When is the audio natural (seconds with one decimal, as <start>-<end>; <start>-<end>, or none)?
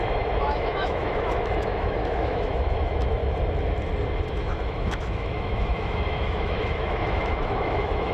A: 3.2-4.3